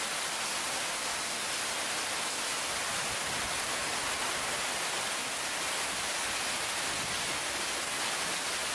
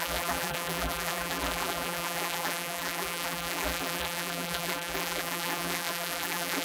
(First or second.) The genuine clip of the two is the first